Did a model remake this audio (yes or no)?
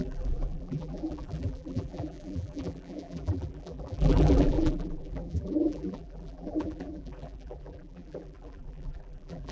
yes